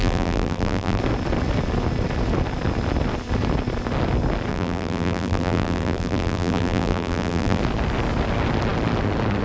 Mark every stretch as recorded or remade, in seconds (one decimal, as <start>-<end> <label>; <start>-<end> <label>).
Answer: 0.0-1.0 remade; 1.0-4.5 recorded; 4.5-7.6 remade; 7.6-9.4 recorded